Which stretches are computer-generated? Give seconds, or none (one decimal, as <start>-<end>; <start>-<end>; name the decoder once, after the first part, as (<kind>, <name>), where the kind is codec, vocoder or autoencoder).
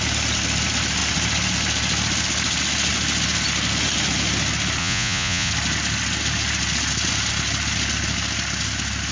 4.8-5.5 (vocoder, Vocos)